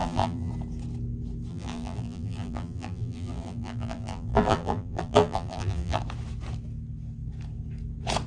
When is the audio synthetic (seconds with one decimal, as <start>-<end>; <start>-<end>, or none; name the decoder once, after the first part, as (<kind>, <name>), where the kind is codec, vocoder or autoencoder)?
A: 0.0-0.5 (vocoder, BigVGAN v2); 1.5-6.0